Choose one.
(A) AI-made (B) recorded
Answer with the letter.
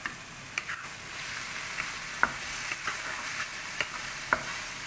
B